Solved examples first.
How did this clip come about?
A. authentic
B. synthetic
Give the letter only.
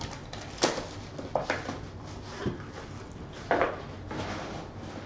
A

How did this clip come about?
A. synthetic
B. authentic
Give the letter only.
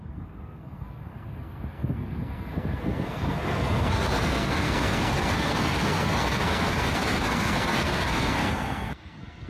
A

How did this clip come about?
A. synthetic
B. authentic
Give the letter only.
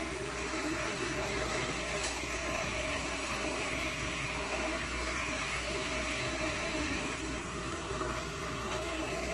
A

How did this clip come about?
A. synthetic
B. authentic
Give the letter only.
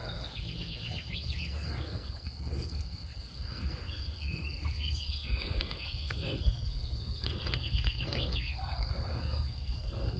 A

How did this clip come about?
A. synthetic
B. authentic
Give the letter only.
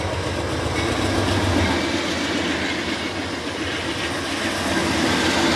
B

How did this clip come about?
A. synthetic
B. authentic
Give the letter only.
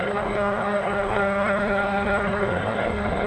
A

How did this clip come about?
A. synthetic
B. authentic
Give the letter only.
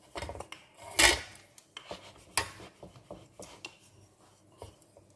B